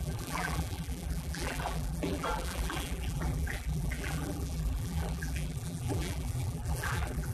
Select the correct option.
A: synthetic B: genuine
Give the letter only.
A